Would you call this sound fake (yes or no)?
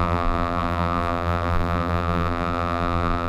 yes